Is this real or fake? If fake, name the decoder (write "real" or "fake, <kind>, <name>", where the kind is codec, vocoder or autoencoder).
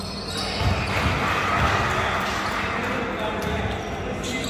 real